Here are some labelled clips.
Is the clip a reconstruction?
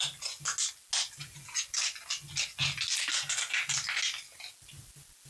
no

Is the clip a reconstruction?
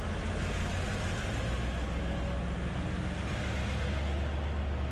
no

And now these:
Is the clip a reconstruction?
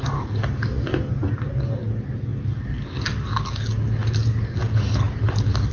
no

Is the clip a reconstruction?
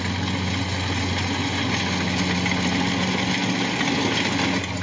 no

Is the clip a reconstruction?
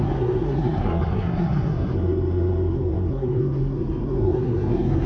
yes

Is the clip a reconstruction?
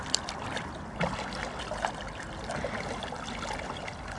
no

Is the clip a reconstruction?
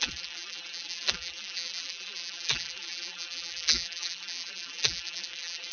yes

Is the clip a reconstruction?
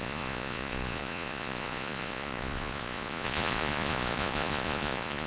yes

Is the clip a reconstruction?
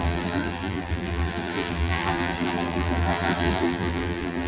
yes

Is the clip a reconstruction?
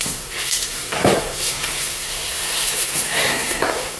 yes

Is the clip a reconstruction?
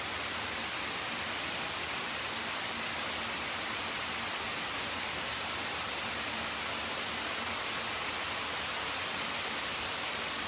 no